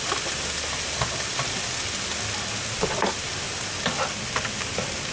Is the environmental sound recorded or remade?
recorded